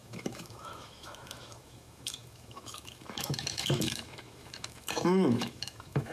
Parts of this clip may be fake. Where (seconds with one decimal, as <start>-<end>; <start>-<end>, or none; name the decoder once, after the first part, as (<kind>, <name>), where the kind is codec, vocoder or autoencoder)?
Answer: 0.0-6.1 (autoencoder, DAC-VAE)